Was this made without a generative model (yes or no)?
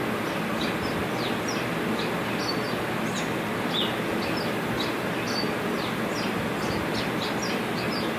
yes